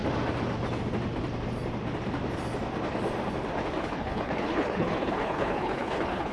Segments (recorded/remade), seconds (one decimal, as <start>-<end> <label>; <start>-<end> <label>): 0.0-3.8 recorded; 3.8-6.3 remade